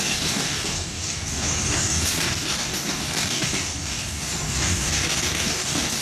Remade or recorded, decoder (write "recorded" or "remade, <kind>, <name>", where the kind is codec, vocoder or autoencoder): remade, codec, DAC